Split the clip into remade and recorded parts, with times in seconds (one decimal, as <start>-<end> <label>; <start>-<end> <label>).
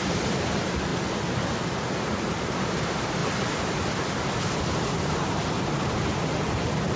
0.0-0.9 remade; 0.9-2.0 recorded; 2.0-3.2 remade; 3.2-4.9 recorded; 4.9-7.0 remade